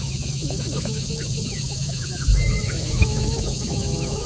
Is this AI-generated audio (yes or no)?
yes